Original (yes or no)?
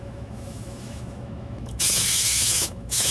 no